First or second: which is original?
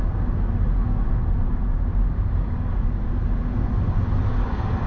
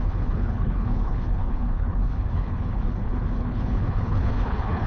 first